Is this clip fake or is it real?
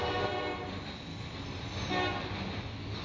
real